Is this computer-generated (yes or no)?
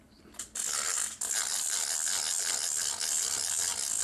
no